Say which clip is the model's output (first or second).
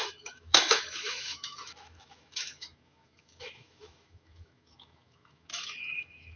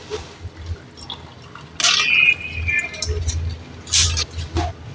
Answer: first